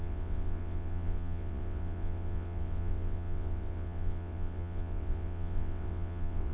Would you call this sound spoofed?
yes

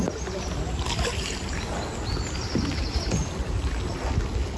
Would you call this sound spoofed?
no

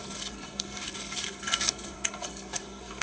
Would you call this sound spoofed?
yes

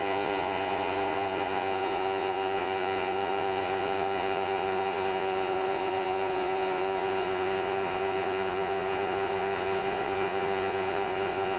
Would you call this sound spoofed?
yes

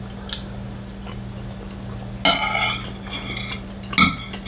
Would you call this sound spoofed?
no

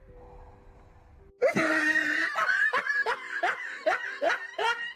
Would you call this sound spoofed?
no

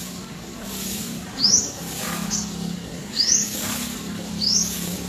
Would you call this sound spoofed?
yes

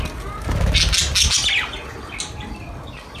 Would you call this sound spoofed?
no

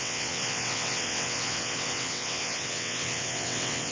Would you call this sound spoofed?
yes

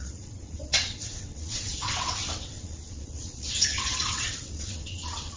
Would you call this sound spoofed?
yes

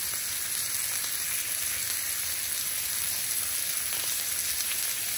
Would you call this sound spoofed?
no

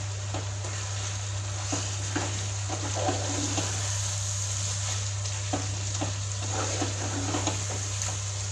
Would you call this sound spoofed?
no